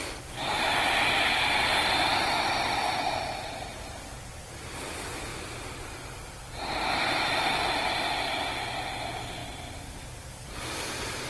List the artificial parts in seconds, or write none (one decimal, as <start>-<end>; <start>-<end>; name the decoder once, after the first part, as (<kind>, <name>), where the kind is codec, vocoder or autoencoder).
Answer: 5.3-8.1 (vocoder, BigVGAN v2); 9.4-10.8